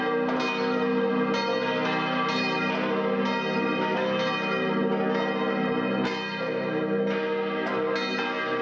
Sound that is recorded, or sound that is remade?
recorded